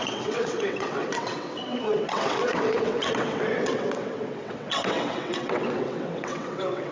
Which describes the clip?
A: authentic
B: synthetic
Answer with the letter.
B